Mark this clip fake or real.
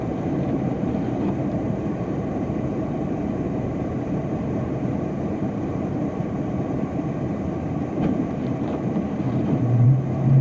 fake